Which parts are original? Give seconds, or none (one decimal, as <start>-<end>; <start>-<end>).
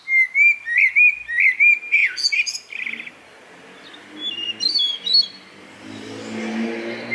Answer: 0.0-7.1